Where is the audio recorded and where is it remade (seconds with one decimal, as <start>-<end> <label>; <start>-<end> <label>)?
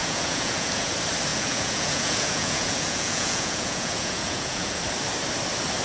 0.0-0.9 remade; 0.9-1.3 recorded; 1.3-4.8 remade; 4.8-5.8 recorded